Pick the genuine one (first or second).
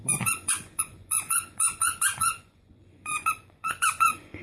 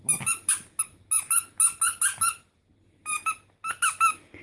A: second